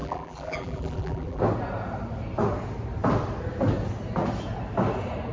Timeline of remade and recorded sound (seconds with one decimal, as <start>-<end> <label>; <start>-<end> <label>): 0.0-1.4 remade; 1.4-5.3 recorded